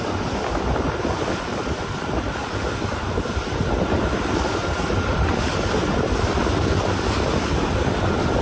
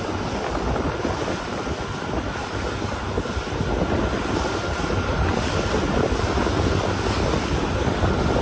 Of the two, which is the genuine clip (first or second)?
second